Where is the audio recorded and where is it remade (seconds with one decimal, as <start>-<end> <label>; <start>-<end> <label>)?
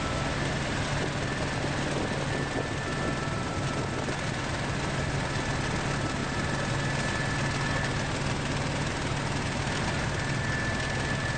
0.0-11.4 recorded